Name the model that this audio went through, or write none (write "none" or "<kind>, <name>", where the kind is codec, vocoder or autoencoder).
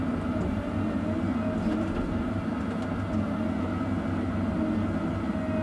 none